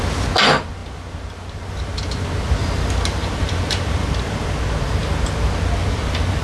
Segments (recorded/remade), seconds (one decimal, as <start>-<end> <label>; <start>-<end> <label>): 0.0-3.2 recorded; 3.2-4.1 remade; 4.1-5.8 recorded; 5.8-6.4 remade